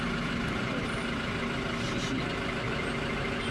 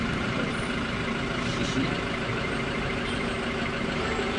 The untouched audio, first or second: first